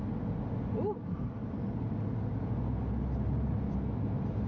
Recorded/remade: recorded